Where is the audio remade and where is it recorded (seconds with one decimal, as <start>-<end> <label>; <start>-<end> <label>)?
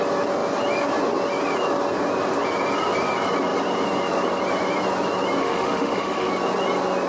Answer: 0.0-5.4 recorded; 5.4-6.3 remade; 6.3-7.1 recorded